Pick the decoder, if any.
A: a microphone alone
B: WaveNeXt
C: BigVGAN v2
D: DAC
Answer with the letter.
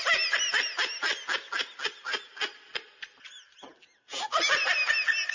A